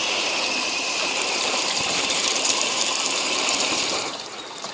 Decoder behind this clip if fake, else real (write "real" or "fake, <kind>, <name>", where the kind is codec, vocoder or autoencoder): fake, vocoder, BigVGAN v2